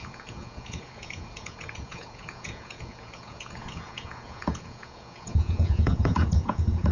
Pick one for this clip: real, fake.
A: fake